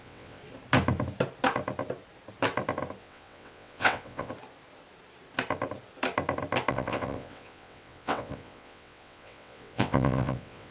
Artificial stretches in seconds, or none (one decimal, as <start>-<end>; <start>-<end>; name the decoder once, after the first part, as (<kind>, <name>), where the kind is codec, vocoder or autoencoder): 0.0-0.4 (vocoder, WaveNeXt); 3.0-4.3; 6.7-10.7